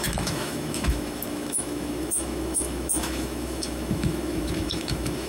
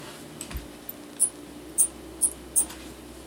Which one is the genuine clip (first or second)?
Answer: second